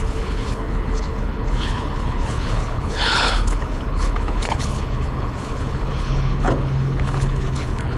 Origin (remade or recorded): remade